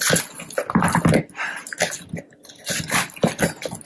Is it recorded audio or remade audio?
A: recorded